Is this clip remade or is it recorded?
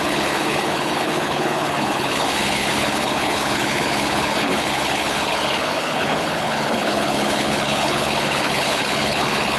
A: remade